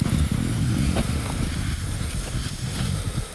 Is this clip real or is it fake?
real